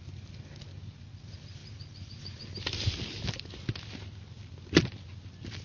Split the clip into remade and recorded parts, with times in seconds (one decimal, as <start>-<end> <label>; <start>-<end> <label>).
0.0-5.6 recorded